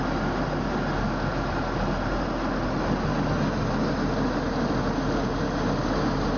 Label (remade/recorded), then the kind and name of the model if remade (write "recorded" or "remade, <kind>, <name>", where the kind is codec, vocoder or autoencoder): recorded